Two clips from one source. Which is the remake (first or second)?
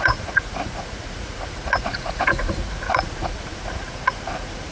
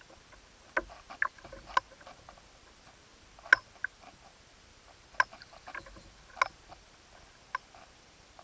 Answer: first